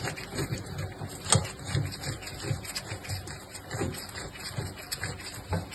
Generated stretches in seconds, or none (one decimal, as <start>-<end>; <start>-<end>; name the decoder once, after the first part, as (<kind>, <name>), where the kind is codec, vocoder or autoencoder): none